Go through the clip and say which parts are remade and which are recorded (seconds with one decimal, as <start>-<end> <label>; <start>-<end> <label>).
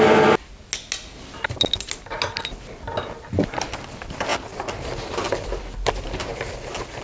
0.0-7.0 recorded